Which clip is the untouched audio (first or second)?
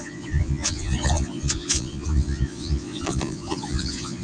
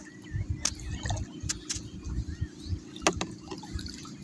second